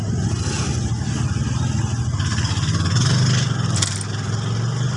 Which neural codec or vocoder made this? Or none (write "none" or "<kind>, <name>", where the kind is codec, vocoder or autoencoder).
none